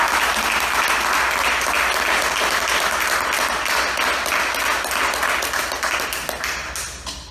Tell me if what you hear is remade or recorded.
recorded